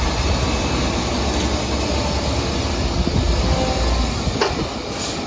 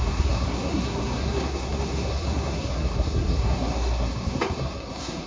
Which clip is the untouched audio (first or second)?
first